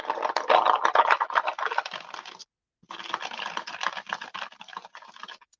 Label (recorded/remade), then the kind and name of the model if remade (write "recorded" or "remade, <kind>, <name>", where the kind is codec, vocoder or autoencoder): recorded